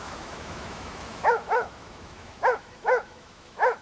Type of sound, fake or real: fake